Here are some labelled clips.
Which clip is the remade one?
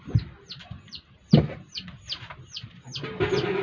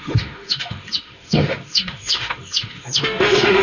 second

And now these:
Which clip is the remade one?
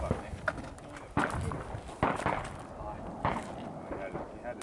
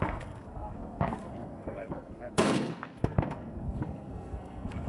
second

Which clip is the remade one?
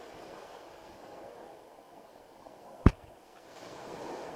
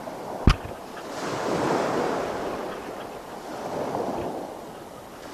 first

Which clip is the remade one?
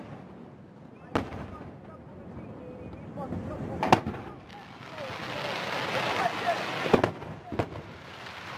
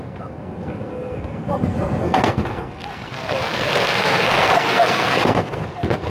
second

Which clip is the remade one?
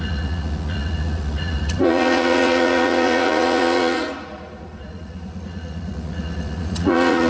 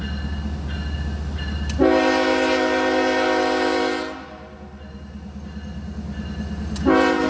first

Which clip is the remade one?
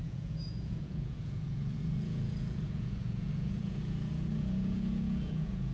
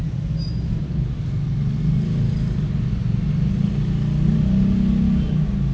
first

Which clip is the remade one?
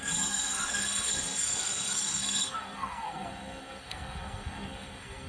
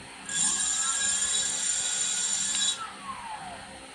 first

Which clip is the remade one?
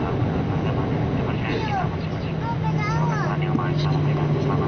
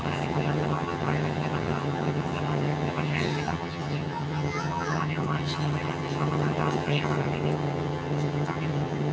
second